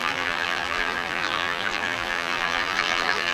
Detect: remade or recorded remade